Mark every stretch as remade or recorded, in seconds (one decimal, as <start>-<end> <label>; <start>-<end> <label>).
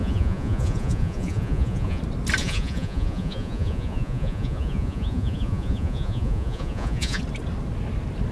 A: 0.0-2.0 remade; 2.0-2.4 recorded; 2.4-7.2 remade; 7.2-8.3 recorded